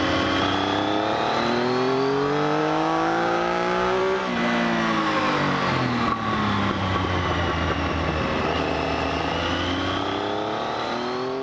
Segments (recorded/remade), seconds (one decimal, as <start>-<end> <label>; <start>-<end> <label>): 0.0-2.6 recorded; 2.6-4.0 remade; 4.0-11.4 recorded